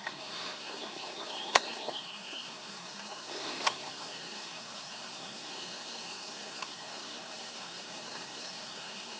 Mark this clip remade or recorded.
remade